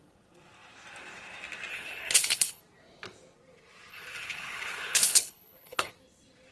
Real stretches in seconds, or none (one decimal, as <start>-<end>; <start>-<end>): 0.0-1.7; 2.6-3.9; 5.9-6.5

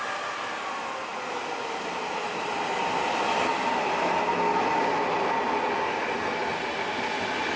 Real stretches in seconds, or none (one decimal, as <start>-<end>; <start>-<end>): 0.0-7.6

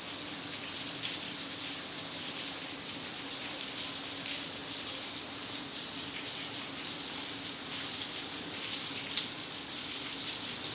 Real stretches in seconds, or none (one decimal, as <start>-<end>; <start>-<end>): 0.0-10.7

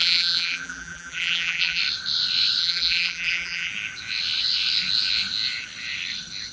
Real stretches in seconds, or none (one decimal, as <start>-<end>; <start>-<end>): 1.8-2.6; 3.7-6.5

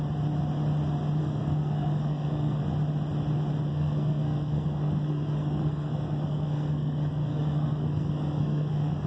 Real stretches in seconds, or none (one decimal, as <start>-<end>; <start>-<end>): 0.0-1.2; 2.6-3.7

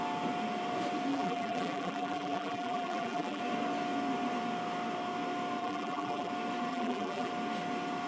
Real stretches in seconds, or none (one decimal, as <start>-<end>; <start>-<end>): 0.0-1.1; 3.4-5.6; 6.3-6.7; 7.3-8.1

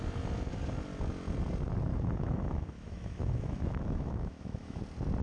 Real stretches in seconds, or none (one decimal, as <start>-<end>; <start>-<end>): 0.0-1.9; 4.8-5.2

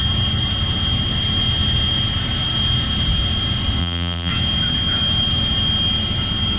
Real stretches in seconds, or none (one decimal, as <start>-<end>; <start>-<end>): 0.0-3.8; 4.3-6.6